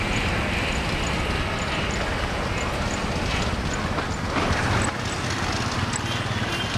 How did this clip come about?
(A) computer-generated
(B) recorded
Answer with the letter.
B